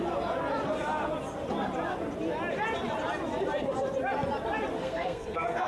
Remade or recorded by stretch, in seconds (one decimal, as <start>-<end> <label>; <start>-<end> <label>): 0.0-4.7 recorded; 4.7-5.7 remade